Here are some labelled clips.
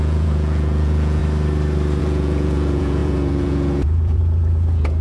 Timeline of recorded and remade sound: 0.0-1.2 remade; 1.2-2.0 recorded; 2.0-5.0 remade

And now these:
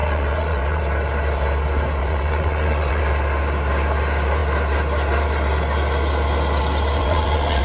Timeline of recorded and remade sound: 0.0-0.8 remade; 0.8-2.0 recorded; 2.0-3.0 remade; 3.0-7.0 recorded; 7.0-7.6 remade

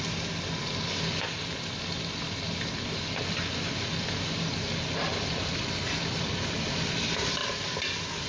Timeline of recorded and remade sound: 0.0-8.3 recorded

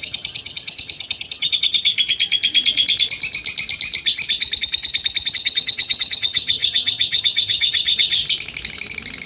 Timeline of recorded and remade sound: 0.0-1.9 remade; 1.9-5.3 recorded; 5.3-8.2 remade; 8.2-9.3 recorded